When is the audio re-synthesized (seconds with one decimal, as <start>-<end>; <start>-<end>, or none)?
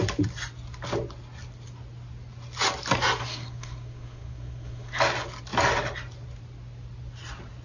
3.2-5.0